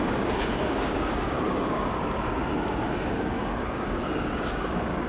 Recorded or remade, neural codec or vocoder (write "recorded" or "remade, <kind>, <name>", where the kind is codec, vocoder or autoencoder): remade, codec, DAC